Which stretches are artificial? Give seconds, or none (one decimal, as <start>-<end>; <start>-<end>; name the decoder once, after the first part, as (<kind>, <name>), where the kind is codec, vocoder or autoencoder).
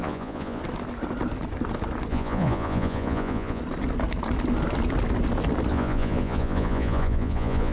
0.0-0.6 (vocoder, Vocos); 2.1-3.6; 5.7-7.7